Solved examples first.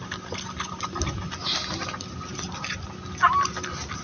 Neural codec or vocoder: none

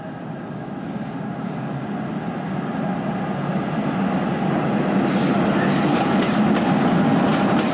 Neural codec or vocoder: none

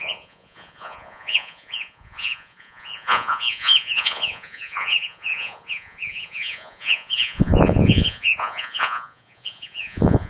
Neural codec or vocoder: vocoder, Vocos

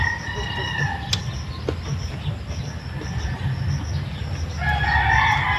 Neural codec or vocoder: none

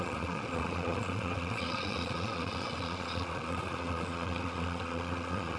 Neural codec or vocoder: vocoder, Vocos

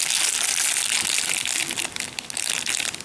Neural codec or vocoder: none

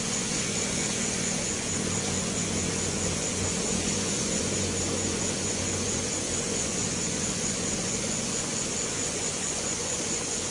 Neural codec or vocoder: vocoder, Vocos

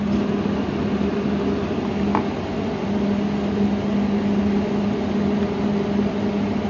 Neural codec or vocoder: none